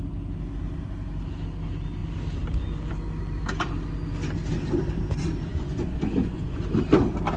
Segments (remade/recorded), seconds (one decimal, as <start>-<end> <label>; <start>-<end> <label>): 0.0-5.5 recorded; 5.5-6.6 remade; 6.6-7.4 recorded